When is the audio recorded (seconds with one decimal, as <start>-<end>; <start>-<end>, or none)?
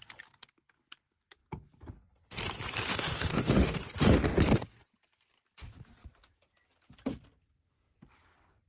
0.0-2.9; 3.8-8.7